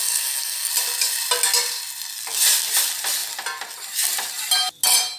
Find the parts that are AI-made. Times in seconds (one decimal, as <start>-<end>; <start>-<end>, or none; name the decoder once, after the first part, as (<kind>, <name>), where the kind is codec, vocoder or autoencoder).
0.0-0.7 (codec, SNAC)